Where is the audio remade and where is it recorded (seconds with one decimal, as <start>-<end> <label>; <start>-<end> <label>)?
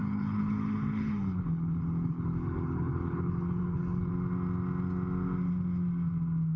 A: 0.0-4.1 remade; 4.1-6.6 recorded